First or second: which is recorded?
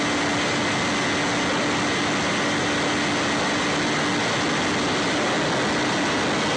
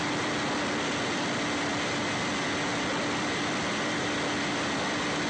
first